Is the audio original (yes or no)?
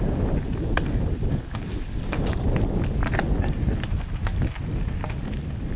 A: yes